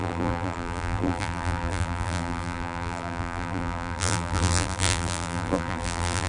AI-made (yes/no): yes